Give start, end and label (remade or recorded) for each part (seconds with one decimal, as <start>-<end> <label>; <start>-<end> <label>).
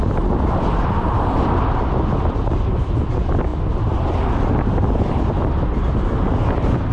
0.0-6.9 recorded